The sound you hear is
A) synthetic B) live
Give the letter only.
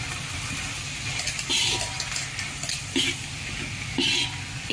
B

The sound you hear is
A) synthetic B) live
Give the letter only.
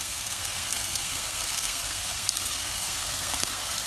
A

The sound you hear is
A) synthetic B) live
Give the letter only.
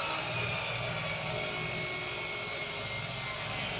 B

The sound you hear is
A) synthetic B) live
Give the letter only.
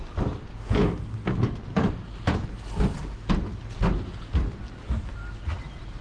B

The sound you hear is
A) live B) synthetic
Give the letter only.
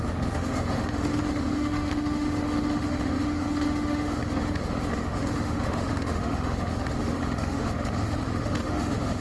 B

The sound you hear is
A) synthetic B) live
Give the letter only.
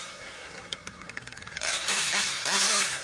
A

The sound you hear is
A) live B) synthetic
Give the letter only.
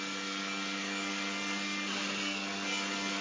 B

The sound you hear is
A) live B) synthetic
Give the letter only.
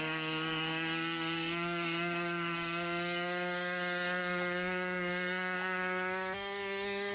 B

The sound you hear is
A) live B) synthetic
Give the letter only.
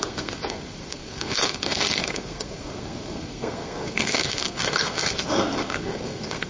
B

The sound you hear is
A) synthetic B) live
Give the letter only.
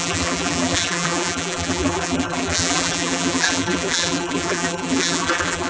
A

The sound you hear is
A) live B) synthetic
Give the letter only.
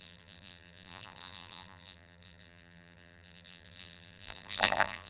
B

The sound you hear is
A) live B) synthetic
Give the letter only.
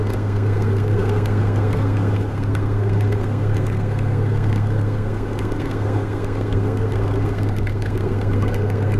B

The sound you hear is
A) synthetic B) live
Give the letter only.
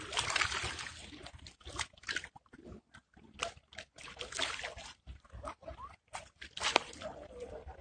B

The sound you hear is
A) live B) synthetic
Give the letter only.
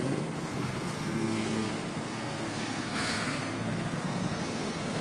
B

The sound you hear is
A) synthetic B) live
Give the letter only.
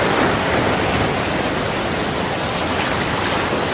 B